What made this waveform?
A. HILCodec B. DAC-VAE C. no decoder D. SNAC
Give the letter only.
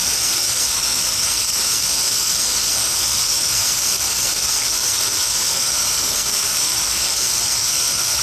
D